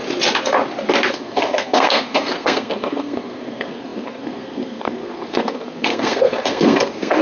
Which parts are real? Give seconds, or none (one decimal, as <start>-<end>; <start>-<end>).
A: 0.0-1.1